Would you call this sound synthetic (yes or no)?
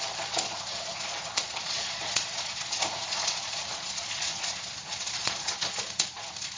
yes